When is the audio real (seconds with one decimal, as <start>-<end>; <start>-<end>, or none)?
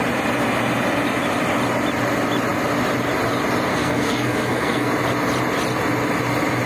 0.0-3.7; 4.9-6.7